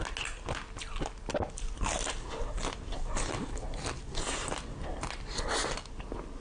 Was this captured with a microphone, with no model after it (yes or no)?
yes